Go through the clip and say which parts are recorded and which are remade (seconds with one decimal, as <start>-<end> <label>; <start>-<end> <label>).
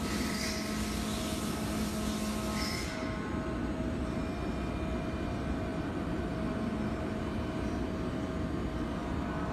0.0-9.5 recorded